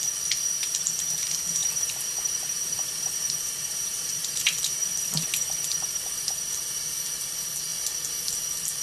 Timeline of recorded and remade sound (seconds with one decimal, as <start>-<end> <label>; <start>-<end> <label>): 0.0-1.6 recorded; 1.6-6.3 remade; 6.3-8.8 recorded